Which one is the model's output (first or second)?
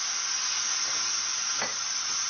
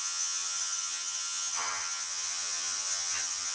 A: second